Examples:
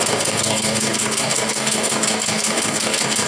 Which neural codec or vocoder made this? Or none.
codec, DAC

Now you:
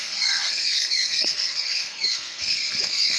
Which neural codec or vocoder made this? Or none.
codec, SNAC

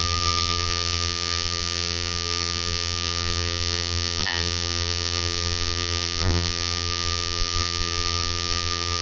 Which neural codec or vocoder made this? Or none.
vocoder, BigVGAN v2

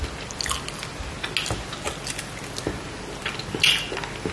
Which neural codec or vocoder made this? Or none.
none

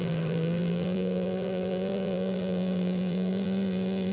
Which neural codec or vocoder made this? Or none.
vocoder, BigVGAN v2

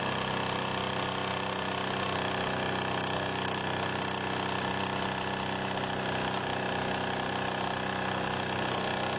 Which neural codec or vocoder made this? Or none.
none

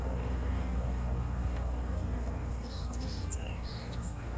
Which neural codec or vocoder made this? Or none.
codec, DAC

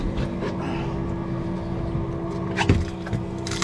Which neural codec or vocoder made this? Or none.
none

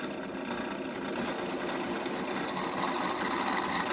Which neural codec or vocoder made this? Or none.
none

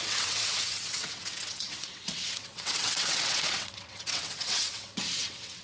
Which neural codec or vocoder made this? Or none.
vocoder, WaveNeXt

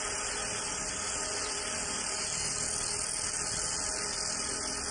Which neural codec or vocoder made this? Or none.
none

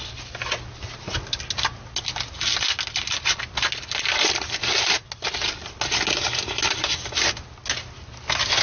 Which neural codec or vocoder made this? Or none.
none